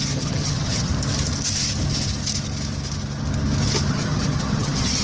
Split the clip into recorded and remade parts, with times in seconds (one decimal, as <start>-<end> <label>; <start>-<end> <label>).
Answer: 0.0-0.9 remade; 0.9-3.9 recorded; 3.9-5.0 remade